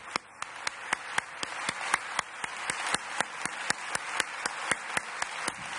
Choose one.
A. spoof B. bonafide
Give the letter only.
B